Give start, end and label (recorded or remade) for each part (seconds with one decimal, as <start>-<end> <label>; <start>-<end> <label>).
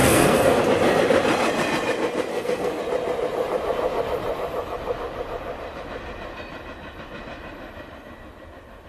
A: 0.0-0.6 remade; 0.6-2.3 recorded; 2.3-2.8 remade; 2.8-8.9 recorded